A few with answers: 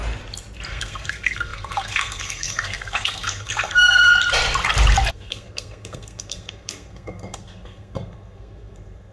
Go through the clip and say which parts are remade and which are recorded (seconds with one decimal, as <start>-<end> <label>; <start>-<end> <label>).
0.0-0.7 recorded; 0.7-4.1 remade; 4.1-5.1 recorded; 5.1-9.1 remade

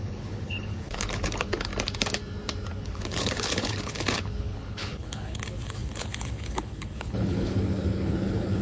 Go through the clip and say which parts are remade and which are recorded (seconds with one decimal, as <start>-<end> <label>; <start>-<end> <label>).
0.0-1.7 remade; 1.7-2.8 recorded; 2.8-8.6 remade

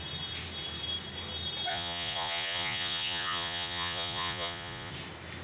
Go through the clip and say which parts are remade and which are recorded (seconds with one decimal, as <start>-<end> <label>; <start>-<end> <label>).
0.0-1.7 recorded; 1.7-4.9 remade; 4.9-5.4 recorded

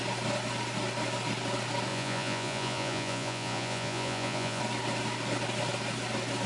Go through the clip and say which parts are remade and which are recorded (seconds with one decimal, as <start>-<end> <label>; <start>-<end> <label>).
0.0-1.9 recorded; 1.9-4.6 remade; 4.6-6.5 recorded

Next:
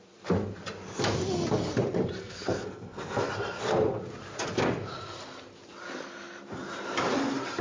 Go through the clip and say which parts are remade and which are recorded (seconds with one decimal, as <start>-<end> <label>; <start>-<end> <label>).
0.0-2.2 recorded; 2.2-3.3 remade; 3.3-7.6 recorded

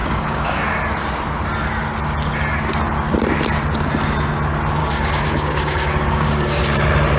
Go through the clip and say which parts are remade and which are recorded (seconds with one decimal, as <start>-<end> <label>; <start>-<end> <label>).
0.0-0.6 remade; 0.6-4.8 recorded; 4.8-6.6 remade; 6.6-7.2 recorded

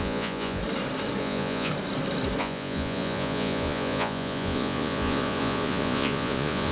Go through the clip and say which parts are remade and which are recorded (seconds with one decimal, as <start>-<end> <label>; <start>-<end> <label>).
0.0-0.6 remade; 0.6-1.2 recorded; 1.2-1.7 remade; 1.7-2.4 recorded; 2.4-6.7 remade

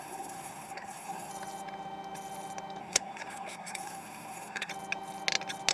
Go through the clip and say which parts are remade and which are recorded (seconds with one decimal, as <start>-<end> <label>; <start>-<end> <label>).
0.0-1.3 remade; 1.3-2.8 recorded; 2.8-4.7 remade; 4.7-5.7 recorded